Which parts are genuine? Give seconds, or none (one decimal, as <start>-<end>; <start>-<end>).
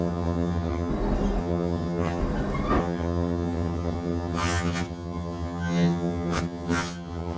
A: 0.9-1.4; 2.2-2.8